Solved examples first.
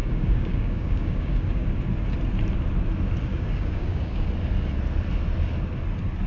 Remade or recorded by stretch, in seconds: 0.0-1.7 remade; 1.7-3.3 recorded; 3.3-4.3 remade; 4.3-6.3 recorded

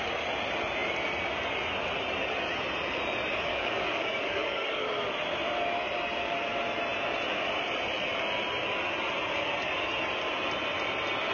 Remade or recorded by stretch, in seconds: 0.0-3.5 recorded; 3.5-5.1 remade; 5.1-11.3 recorded

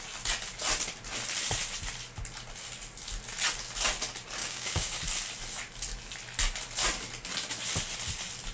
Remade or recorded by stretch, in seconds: 0.0-4.4 recorded; 4.4-5.0 remade; 5.0-8.5 recorded

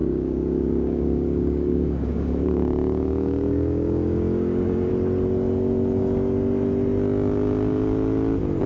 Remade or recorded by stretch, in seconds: 0.0-4.9 remade; 4.9-8.7 recorded